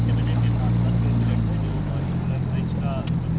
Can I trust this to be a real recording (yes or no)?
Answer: yes